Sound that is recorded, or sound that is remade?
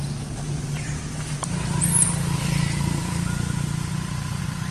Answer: remade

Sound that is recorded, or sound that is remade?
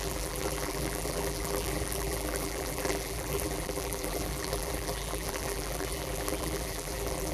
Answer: remade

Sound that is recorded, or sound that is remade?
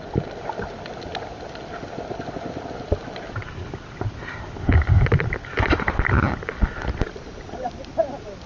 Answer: recorded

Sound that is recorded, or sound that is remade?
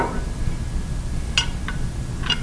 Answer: recorded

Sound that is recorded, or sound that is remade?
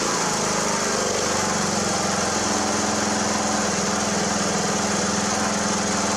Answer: recorded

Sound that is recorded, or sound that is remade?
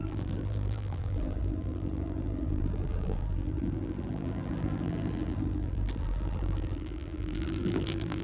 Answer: remade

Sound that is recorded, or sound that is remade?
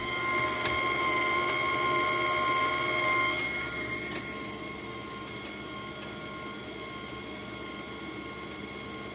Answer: recorded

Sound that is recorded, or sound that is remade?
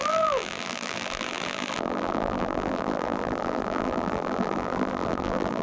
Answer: remade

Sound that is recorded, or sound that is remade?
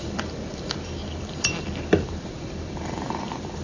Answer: remade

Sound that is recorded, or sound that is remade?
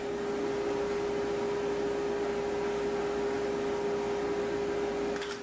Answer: recorded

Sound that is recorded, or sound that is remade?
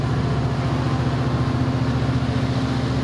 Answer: remade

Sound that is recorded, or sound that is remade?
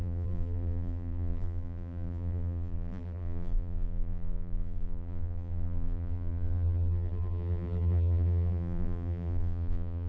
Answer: remade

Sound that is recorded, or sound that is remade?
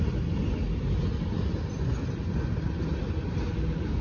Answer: recorded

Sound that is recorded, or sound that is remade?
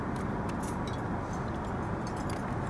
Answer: recorded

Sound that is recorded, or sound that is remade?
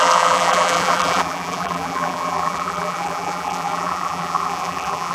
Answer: remade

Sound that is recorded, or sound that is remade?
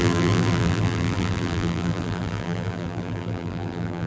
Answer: remade